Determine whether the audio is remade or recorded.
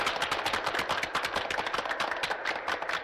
recorded